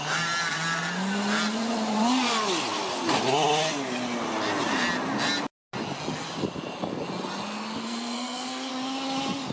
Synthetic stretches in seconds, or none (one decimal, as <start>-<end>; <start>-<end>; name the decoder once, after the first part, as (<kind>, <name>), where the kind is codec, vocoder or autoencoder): 7.8-8.7 (codec, SNAC)